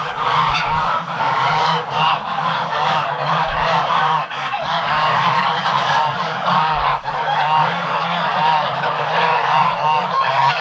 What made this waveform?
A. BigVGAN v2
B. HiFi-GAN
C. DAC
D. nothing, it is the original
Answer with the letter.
C